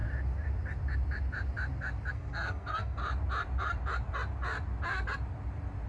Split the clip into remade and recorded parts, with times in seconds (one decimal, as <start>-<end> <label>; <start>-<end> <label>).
0.0-2.1 recorded; 2.1-3.0 remade; 3.0-5.9 recorded